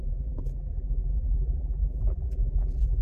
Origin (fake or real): fake